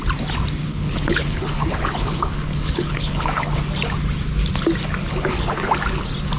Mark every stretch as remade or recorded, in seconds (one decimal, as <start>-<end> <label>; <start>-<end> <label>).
0.0-0.7 recorded; 0.7-3.6 remade; 3.6-5.0 recorded; 5.0-5.7 remade; 5.7-6.4 recorded